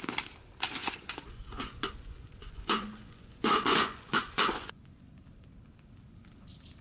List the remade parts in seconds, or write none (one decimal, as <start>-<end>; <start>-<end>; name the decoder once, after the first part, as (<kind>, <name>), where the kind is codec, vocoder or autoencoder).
0.8-4.9 (vocoder, Vocos)